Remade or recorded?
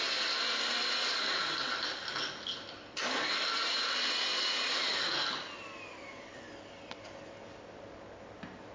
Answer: recorded